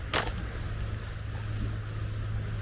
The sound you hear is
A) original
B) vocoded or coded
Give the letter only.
A